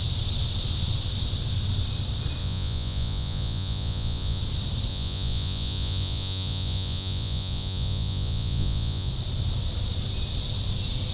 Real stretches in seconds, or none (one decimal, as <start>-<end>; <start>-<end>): 0.0-2.4; 4.4-4.9; 9.1-11.1